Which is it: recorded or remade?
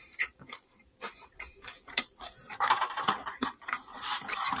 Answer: remade